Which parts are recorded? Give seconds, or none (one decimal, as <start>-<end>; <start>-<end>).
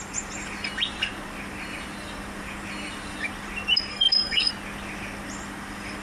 0.0-3.9; 4.5-6.0